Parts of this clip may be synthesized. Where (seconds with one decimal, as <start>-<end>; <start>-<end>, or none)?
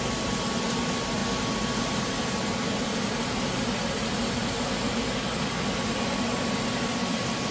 none